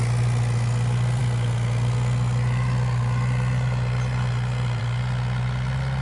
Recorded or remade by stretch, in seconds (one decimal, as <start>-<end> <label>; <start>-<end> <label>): 0.0-6.0 recorded